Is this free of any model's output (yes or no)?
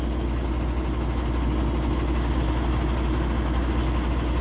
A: yes